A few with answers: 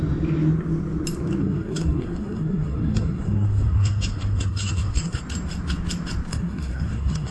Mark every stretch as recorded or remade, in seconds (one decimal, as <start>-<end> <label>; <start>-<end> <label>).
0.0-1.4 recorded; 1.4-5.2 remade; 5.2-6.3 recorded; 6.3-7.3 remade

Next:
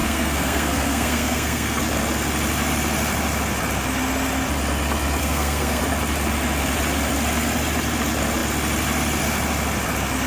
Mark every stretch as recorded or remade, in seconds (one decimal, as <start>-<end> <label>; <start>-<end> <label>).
0.0-1.8 remade; 1.8-5.2 recorded; 5.2-5.8 remade; 5.8-10.3 recorded

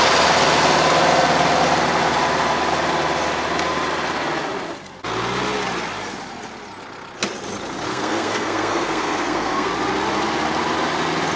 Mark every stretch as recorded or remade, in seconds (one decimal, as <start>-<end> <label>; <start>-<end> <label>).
0.0-7.9 recorded; 7.9-9.7 remade; 9.7-11.4 recorded

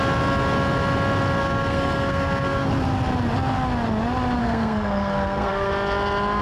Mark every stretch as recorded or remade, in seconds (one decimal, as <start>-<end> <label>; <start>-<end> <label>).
0.0-1.4 recorded; 1.4-2.7 remade; 2.7-4.4 recorded; 4.4-5.7 remade; 5.7-6.4 recorded